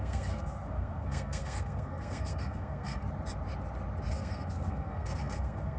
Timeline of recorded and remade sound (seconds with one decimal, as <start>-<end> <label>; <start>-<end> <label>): 0.0-3.0 remade; 3.0-4.1 recorded; 4.1-5.8 remade